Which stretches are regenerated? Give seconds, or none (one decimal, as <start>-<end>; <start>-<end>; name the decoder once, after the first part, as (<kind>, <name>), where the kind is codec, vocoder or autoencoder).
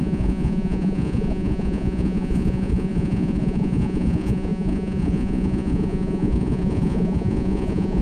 0.0-8.0 (vocoder, Vocos)